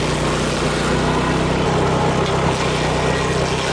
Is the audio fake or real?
real